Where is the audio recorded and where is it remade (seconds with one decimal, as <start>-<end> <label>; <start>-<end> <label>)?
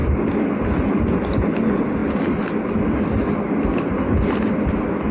0.0-5.1 recorded